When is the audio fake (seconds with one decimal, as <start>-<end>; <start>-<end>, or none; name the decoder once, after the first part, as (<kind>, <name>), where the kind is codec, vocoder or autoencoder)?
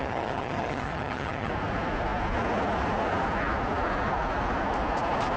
0.0-1.5 (vocoder, HiFi-GAN)